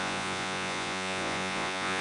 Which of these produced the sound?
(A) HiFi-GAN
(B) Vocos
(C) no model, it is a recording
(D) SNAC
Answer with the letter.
B